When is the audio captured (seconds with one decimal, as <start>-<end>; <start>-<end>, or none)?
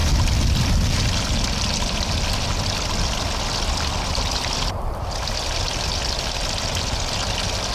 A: 0.0-7.7